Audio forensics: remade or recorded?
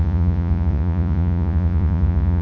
remade